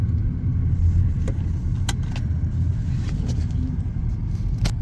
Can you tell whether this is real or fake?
real